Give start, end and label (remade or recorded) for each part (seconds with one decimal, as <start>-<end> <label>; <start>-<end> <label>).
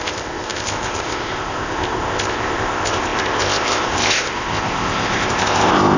0.0-6.0 remade